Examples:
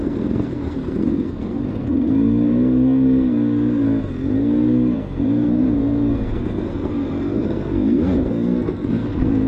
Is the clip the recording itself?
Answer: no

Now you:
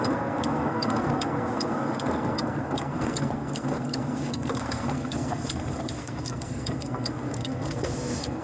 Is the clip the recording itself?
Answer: no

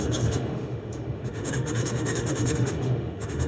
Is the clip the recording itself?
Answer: no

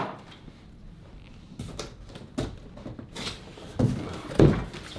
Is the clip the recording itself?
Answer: yes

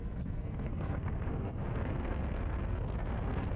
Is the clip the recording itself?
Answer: no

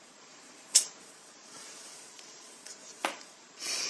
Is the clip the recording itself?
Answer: no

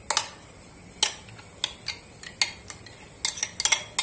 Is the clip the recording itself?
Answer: yes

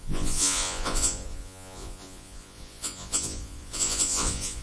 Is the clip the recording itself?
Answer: no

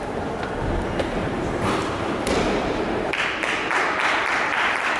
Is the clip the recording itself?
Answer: no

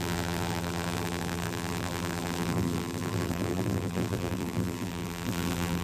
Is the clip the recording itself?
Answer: no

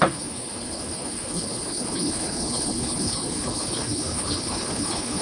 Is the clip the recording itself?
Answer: no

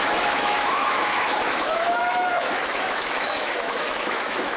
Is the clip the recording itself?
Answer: no